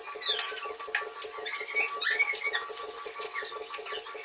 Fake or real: real